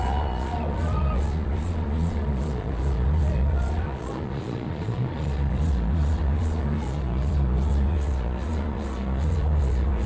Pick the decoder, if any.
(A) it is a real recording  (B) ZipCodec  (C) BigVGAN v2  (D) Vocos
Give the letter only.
D